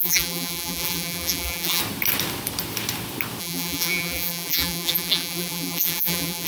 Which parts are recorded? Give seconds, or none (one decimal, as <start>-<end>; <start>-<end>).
1.8-3.4